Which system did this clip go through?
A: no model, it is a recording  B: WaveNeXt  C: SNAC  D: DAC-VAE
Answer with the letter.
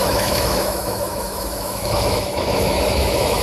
D